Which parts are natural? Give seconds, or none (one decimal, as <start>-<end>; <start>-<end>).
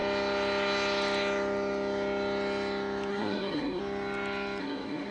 0.0-3.1; 3.8-4.6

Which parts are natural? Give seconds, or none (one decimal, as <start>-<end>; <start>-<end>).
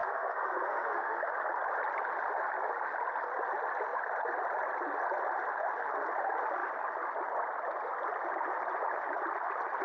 1.2-9.8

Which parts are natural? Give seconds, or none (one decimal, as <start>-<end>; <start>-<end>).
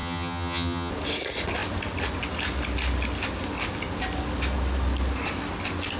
0.9-6.0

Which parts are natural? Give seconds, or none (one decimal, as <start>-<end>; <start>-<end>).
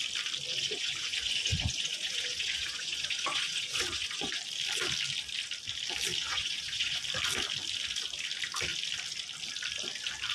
0.0-0.5; 4.4-6.2; 7.0-10.3